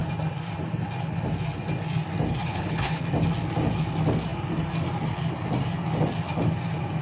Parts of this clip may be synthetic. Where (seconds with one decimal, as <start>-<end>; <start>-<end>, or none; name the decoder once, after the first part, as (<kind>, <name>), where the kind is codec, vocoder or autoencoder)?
2.4-3.0 (codec, HILCodec)